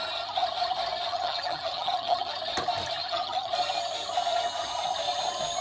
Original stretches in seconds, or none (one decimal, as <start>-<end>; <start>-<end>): 0.0-1.1; 2.3-3.0; 3.5-5.6